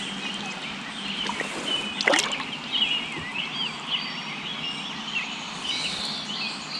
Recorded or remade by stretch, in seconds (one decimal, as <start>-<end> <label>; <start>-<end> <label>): 0.0-3.3 recorded; 3.3-4.2 remade; 4.2-6.8 recorded